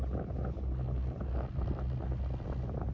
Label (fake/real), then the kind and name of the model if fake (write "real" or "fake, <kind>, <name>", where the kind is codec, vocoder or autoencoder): real